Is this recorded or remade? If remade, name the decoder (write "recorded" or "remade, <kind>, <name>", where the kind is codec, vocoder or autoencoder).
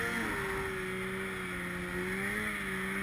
recorded